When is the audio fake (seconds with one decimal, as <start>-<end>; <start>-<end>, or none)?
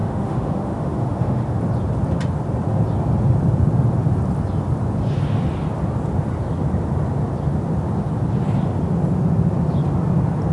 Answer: 0.0-1.6